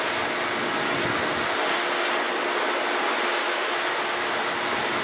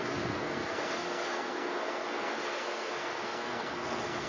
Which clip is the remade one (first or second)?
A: second